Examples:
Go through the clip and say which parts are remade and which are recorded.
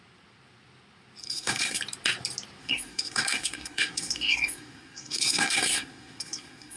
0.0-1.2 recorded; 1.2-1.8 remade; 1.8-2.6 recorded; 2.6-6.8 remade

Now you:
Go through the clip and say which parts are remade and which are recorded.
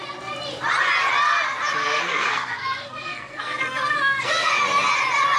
0.0-1.8 recorded; 1.8-4.5 remade; 4.5-5.4 recorded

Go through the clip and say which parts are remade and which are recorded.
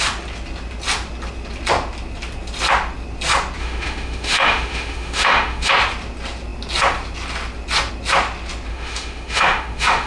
0.0-3.6 recorded; 3.6-5.7 remade; 5.7-8.7 recorded; 8.7-10.1 remade